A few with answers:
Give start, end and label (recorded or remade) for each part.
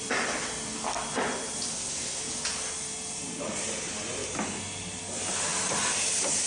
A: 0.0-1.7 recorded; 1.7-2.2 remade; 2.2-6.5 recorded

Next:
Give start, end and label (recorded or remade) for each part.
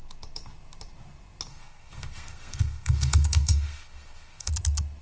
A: 0.0-1.5 recorded; 1.5-4.5 remade; 4.5-5.0 recorded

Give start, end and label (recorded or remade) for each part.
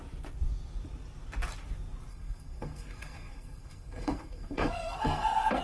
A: 0.0-2.1 recorded; 2.1-5.6 remade